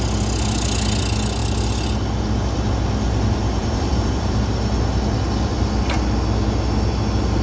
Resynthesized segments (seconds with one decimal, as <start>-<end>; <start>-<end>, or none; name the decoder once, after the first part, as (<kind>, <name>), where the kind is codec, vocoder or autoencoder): 3.6-4.4 (vocoder, BigVGAN v2)